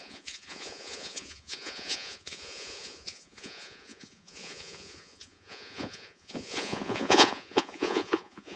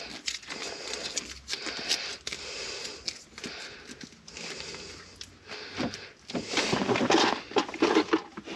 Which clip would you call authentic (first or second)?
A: second